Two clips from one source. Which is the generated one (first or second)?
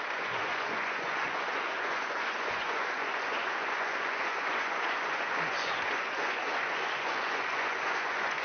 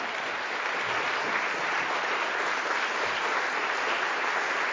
first